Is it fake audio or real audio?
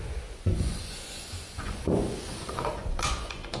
fake